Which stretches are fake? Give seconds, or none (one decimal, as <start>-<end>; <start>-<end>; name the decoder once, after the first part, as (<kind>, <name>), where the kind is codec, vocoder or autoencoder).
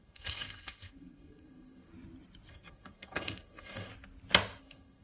0.0-1.9 (codec, SNAC); 2.5-3.9; 4.6-5.0